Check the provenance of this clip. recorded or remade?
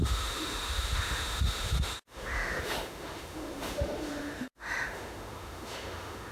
remade